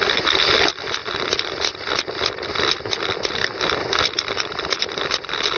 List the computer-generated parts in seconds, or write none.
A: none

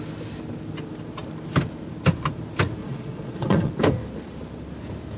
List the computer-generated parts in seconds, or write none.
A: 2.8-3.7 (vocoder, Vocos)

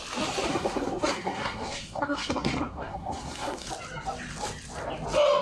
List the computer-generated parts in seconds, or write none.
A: 0.5-3.7 (codec, SNAC)